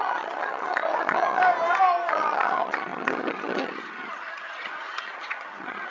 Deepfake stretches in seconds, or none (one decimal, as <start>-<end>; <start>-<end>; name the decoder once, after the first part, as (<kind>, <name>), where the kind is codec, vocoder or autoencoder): 0.0-1.4 (vocoder, HiFi-GAN); 2.1-5.9